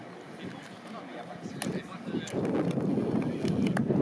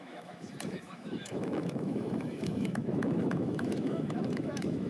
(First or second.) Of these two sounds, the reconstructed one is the second